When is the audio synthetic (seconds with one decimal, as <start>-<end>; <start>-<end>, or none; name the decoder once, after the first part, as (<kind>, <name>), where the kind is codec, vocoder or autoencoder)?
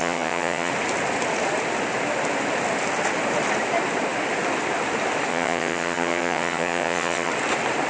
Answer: 0.0-0.7 (vocoder, HiFi-GAN); 5.3-7.3